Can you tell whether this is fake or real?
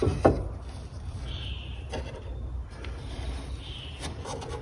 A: real